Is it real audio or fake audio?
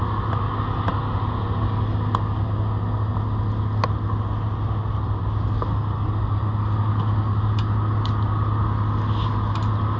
real